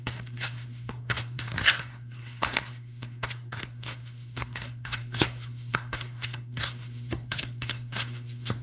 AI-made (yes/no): yes